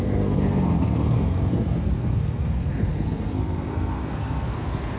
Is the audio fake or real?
fake